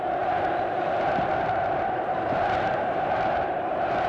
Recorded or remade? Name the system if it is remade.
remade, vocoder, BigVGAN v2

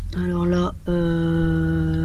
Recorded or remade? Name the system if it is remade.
recorded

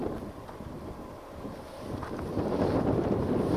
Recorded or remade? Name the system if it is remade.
recorded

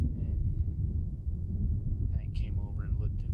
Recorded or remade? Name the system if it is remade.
remade, autoencoder, DAC-VAE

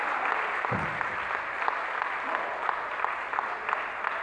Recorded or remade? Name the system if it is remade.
recorded